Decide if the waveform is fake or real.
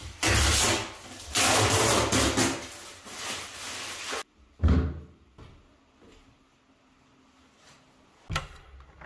real